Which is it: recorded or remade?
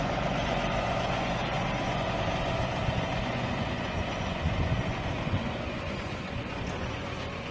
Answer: remade